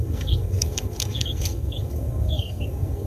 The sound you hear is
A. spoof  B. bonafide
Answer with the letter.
A